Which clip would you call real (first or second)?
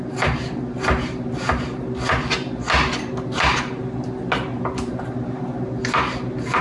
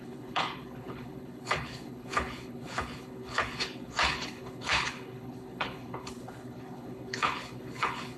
first